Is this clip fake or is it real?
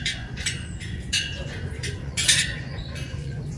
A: fake